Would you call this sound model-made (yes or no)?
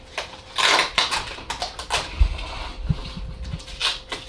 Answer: no